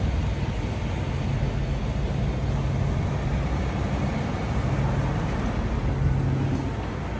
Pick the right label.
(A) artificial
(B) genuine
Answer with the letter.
B